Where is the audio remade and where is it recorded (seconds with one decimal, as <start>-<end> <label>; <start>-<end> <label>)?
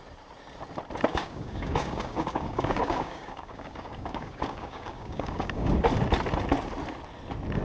0.0-1.1 recorded; 1.1-5.7 remade; 5.7-7.6 recorded